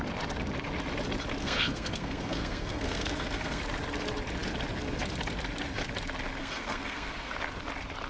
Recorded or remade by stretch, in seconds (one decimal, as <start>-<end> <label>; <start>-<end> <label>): 0.0-1.4 recorded; 1.4-3.6 remade; 3.6-6.4 recorded; 6.4-7.3 remade; 7.3-8.1 recorded